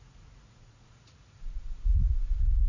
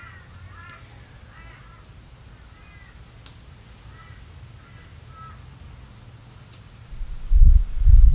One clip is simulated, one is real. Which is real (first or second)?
second